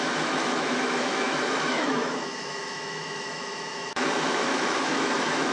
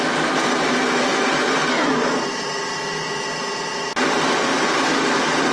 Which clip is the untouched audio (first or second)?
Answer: second